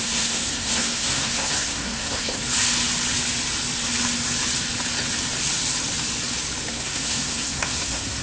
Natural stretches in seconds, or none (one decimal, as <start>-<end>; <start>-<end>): 2.4-6.7